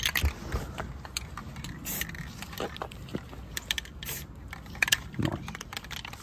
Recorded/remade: recorded